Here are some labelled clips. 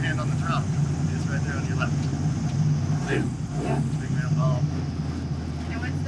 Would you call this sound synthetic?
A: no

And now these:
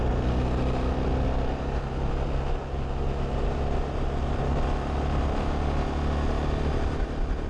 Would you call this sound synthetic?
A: no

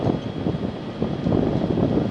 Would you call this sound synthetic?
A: no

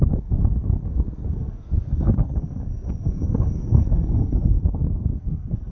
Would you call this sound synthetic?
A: yes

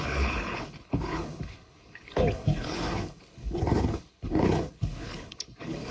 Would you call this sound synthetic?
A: yes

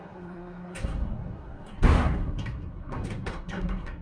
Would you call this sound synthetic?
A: yes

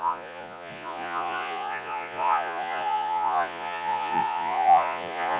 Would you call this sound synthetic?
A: yes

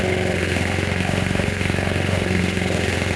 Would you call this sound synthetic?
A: yes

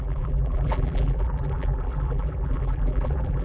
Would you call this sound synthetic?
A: yes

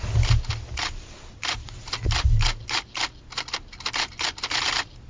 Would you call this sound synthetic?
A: no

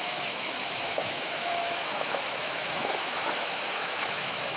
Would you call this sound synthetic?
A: yes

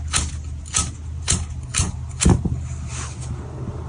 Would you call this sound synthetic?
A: no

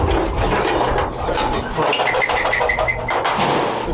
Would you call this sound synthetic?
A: no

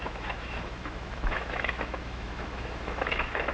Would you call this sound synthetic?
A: yes